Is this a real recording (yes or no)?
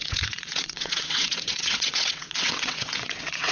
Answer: no